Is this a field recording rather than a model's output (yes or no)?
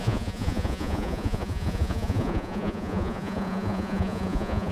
no